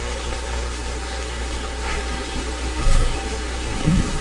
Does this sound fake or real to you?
fake